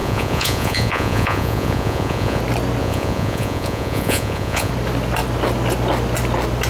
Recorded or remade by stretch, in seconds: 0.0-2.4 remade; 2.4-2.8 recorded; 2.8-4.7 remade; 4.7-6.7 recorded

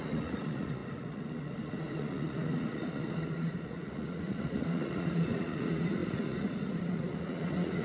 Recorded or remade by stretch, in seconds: 0.0-7.8 remade

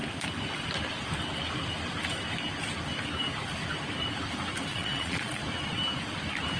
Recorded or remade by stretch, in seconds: 0.0-4.7 recorded; 4.7-5.4 remade; 5.4-6.6 recorded

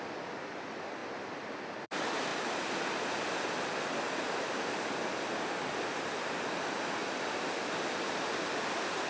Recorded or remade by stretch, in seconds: 0.0-9.1 recorded

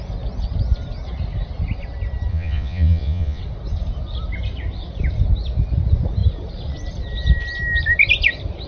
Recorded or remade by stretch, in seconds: 0.0-2.3 recorded; 2.3-3.4 remade; 3.4-8.7 recorded

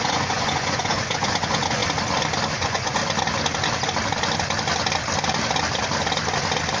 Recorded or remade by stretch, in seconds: 0.0-1.8 remade; 1.8-2.5 recorded; 2.5-3.0 remade; 3.0-6.8 recorded

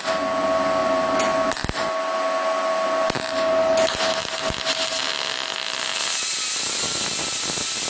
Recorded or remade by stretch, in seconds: 0.0-7.9 recorded

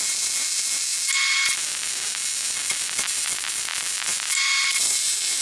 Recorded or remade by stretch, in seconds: 0.0-5.4 recorded